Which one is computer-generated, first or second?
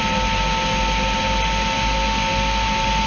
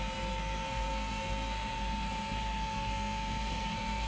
second